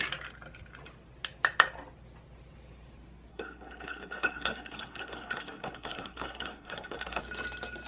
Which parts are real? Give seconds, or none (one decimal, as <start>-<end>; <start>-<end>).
0.0-3.3; 7.2-7.9